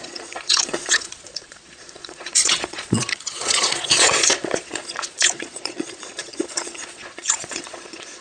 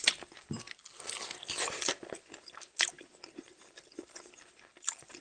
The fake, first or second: first